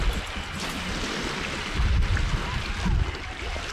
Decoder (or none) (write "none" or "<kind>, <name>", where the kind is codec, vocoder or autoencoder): none